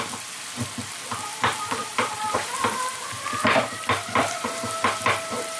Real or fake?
fake